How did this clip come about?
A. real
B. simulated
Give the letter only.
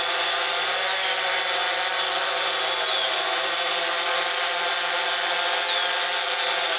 A